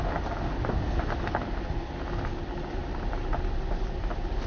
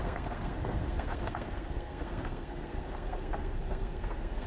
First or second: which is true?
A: first